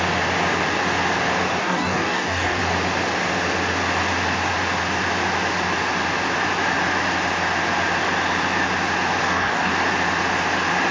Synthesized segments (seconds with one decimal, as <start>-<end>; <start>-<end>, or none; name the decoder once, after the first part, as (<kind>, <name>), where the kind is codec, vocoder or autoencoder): 1.6-2.6 (codec, DAC); 9.2-9.7